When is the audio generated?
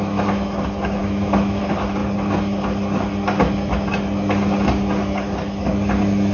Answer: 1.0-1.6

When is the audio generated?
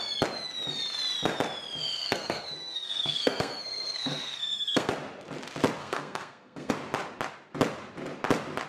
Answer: 1.8-4.9; 5.8-6.7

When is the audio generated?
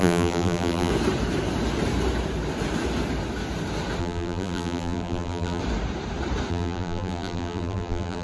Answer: 0.0-0.9; 4.0-5.6; 6.5-8.2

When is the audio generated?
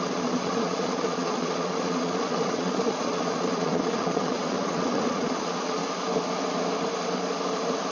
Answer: 0.0-5.8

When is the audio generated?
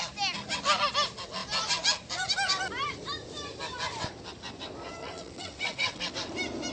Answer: 5.0-6.1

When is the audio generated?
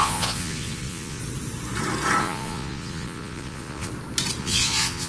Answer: 0.0-1.2; 2.2-3.9; 4.4-5.1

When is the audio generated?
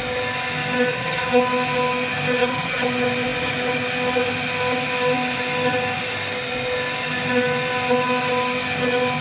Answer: 0.9-1.4; 2.4-2.9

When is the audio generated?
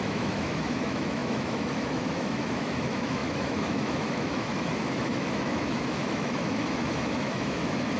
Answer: 0.0-8.0